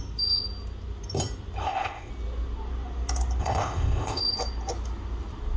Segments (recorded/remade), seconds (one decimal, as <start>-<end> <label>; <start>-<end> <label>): 0.0-1.6 recorded; 1.6-2.1 remade; 2.1-3.4 recorded; 3.4-4.2 remade; 4.2-5.6 recorded